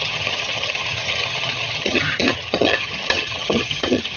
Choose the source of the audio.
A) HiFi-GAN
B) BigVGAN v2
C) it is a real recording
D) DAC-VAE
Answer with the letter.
A